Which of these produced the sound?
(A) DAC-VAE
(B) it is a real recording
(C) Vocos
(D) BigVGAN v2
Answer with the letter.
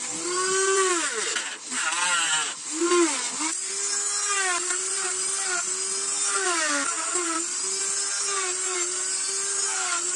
B